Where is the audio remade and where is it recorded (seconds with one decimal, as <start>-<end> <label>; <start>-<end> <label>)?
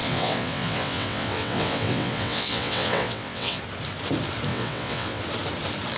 0.0-3.6 remade; 3.6-4.5 recorded; 4.5-5.2 remade; 5.2-6.0 recorded